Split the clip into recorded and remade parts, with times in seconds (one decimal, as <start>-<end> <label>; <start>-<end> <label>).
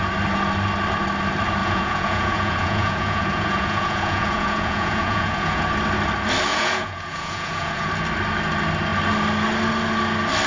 0.0-1.6 recorded; 1.6-5.6 remade; 5.6-6.5 recorded; 6.5-7.9 remade; 7.9-10.5 recorded